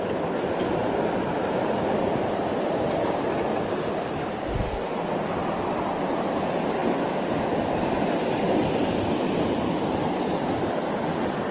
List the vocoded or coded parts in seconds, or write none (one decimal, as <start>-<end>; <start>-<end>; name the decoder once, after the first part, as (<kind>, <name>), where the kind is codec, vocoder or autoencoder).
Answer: none

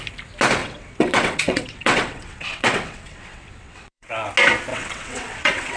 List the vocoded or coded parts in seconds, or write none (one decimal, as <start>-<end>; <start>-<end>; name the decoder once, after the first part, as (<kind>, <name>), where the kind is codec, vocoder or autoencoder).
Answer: 0.6-4.1 (vocoder, WaveNeXt); 4.7-5.8

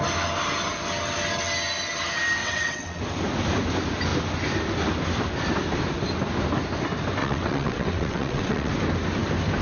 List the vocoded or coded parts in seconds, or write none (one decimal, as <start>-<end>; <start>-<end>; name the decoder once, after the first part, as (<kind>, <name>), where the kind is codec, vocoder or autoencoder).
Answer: 2.4-3.0 (vocoder, WaveNeXt); 7.2-8.7

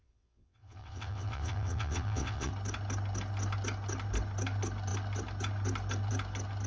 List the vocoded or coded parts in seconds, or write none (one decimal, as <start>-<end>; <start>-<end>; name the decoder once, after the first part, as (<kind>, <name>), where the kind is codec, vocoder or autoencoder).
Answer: 0.0-2.5 (vocoder, WaveNeXt)

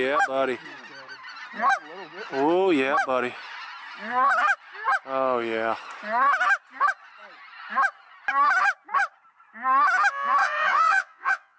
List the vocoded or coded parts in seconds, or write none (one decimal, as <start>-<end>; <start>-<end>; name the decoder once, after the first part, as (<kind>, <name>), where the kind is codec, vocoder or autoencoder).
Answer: 10.4-11.6 (vocoder, WaveNeXt)

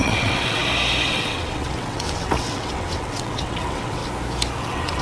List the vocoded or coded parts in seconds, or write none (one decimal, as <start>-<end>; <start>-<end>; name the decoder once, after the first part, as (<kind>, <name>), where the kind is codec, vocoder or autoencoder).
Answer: 0.0-0.6 (vocoder, WaveNeXt); 1.1-4.0; 4.6-5.0